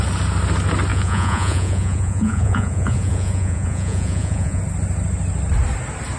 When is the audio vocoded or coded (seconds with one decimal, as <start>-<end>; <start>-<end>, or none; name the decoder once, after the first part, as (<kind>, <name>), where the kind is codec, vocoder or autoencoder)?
0.9-4.6 (vocoder, Vocos)